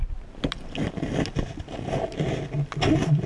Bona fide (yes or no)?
yes